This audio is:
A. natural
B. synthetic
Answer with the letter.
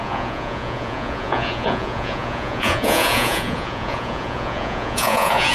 B